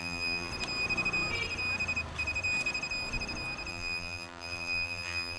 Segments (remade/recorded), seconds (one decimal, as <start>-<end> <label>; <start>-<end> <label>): 0.0-0.5 remade; 0.5-3.7 recorded; 3.7-5.4 remade